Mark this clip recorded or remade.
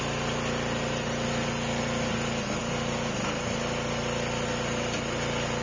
recorded